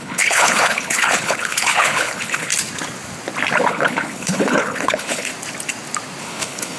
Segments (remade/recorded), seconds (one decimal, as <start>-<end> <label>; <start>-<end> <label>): 0.0-2.5 remade; 2.5-3.7 recorded; 3.7-5.3 remade; 5.3-6.2 recorded; 6.2-6.8 remade